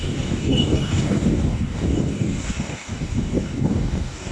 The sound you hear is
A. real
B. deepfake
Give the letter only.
B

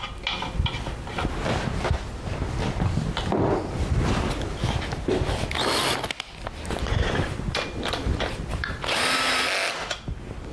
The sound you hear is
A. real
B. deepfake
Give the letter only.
A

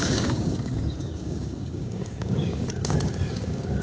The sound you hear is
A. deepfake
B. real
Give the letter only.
A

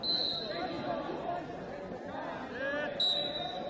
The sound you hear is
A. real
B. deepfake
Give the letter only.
A